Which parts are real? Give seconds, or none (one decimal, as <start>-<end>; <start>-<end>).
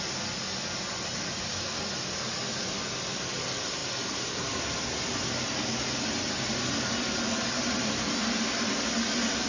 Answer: 0.0-9.5